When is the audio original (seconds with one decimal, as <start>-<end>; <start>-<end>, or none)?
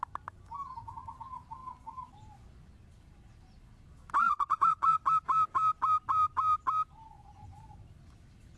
0.0-4.2; 5.1-8.6